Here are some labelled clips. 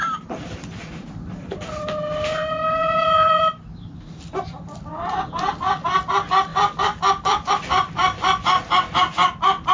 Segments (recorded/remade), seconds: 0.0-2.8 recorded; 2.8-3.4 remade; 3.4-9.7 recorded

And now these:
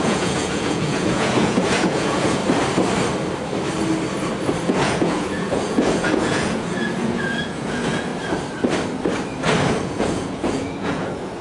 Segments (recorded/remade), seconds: 0.0-2.4 remade; 2.4-4.6 recorded; 4.6-8.1 remade; 8.1-9.8 recorded; 9.8-11.4 remade

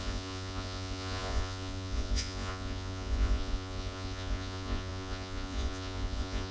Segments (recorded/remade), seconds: 0.0-6.5 remade

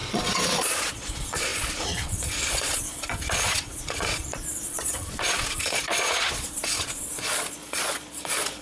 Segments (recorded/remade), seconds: 0.0-8.6 remade

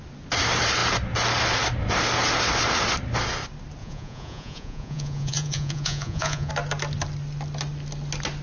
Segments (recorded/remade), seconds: 0.0-3.8 recorded; 3.8-6.5 remade; 6.5-8.4 recorded

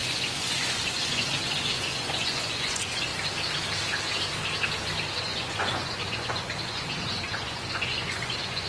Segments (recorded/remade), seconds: 0.0-3.1 remade; 3.1-5.2 recorded; 5.2-8.7 remade

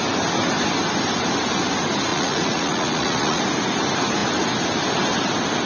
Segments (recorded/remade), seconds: 0.0-2.1 recorded; 2.1-3.4 remade; 3.4-5.7 recorded